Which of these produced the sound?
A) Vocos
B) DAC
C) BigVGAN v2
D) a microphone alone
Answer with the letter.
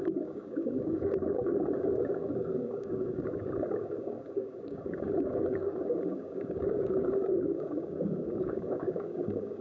B